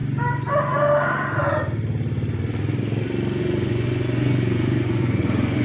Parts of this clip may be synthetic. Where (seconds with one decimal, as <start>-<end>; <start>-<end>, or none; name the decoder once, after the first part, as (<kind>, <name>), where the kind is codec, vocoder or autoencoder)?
3.4-5.6 (vocoder, Vocos)